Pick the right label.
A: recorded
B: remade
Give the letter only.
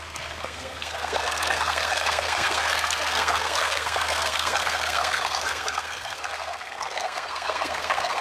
B